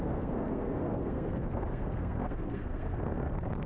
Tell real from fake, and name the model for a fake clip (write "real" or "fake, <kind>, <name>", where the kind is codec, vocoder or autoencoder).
fake, codec, SNAC